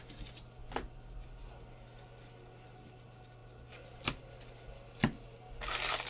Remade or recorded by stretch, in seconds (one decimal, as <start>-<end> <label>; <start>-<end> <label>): 0.0-6.1 recorded